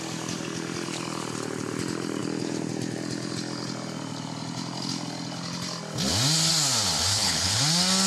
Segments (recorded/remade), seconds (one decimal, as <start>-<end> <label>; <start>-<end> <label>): 0.0-7.1 recorded; 7.1-7.6 remade; 7.6-8.1 recorded